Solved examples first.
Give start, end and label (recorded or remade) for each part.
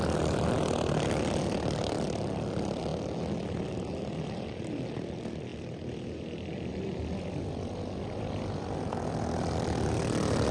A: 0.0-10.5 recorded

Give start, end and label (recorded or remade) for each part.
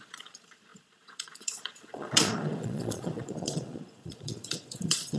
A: 0.0-5.2 remade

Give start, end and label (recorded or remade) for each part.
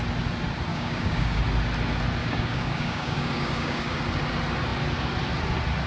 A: 0.0-0.7 recorded; 0.7-1.4 remade; 1.4-2.2 recorded; 2.2-4.0 remade; 4.0-5.9 recorded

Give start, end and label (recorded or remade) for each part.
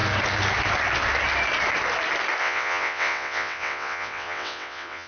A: 0.0-2.4 recorded; 2.4-5.1 remade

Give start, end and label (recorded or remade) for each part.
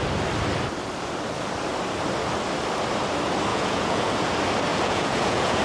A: 0.0-3.5 recorded; 3.5-4.1 remade; 4.1-4.7 recorded; 4.7-5.6 remade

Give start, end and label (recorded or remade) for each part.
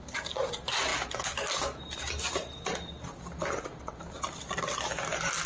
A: 0.0-5.5 recorded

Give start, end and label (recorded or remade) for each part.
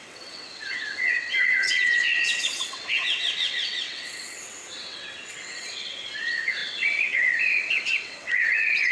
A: 0.0-8.9 remade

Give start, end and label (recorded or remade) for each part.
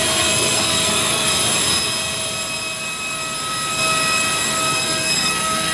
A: 0.0-1.3 remade; 1.3-4.7 recorded; 4.7-5.7 remade